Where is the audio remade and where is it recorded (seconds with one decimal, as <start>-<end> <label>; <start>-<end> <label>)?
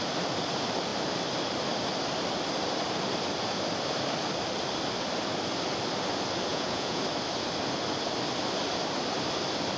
0.0-6.5 recorded; 6.5-7.0 remade; 7.0-9.8 recorded